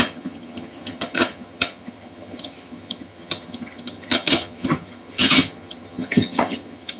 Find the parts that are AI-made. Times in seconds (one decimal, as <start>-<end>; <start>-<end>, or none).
0.0-7.0